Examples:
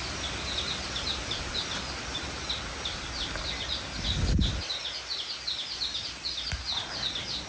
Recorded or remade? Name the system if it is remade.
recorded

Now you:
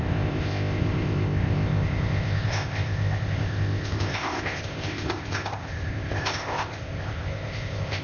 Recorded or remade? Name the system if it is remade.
remade, codec, ZipCodec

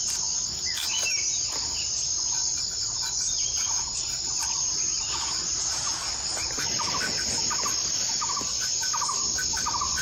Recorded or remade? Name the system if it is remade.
recorded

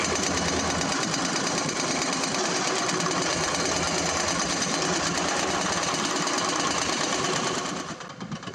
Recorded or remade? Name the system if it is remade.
recorded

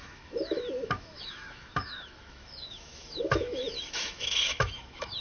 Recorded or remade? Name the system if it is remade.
remade, autoencoder, DAC-VAE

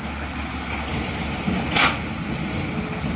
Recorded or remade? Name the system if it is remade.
recorded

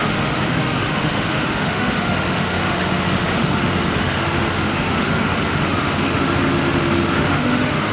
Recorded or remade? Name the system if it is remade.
remade, autoencoder, DAC-VAE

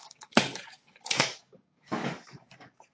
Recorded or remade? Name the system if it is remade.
remade, codec, DAC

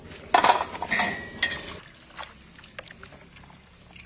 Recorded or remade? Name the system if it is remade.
recorded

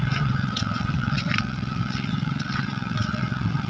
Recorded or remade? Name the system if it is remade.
remade, vocoder, WaveNeXt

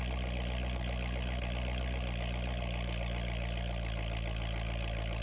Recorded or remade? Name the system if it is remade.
recorded